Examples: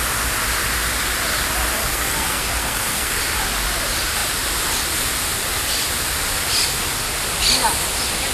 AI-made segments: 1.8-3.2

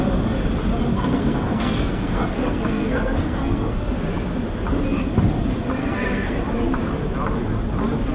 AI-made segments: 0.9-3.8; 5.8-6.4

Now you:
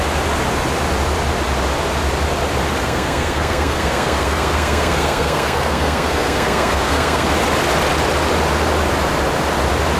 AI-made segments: 2.8-7.3